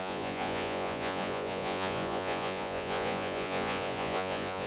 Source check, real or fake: fake